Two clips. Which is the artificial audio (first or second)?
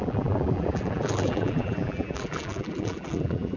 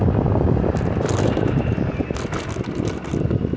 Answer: first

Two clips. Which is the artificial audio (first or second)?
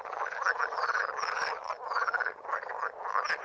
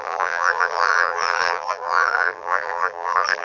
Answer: second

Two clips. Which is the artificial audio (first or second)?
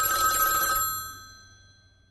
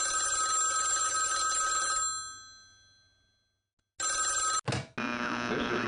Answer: first